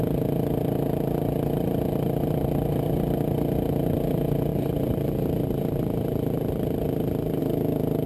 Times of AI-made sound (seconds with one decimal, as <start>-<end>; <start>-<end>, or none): 4.5-7.4